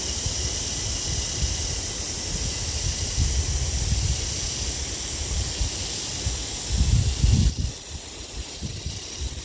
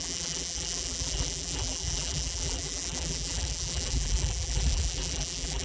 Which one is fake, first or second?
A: second